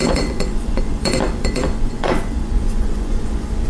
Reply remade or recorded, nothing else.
remade